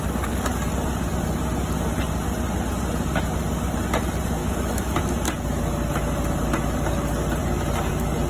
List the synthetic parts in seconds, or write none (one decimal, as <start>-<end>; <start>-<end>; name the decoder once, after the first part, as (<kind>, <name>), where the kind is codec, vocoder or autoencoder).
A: 4.4-5.0 (autoencoder, DAC-VAE)